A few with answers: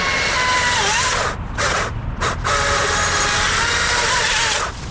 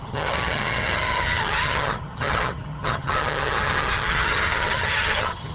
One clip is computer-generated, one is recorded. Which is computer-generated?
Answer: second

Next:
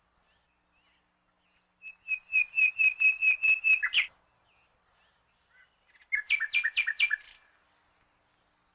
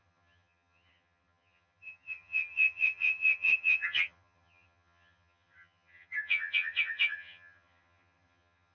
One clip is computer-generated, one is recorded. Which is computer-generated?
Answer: second